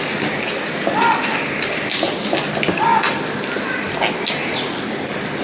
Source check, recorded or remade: recorded